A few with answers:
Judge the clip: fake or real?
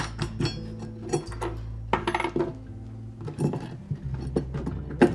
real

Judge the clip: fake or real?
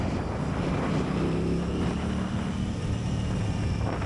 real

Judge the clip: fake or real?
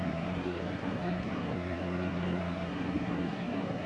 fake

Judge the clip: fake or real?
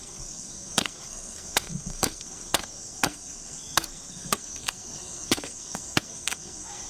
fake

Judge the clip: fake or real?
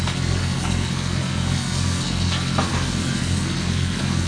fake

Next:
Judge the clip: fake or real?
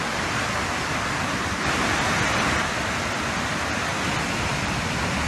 real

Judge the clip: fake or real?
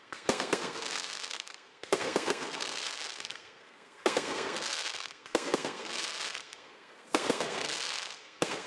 fake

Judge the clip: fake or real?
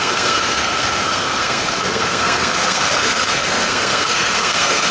fake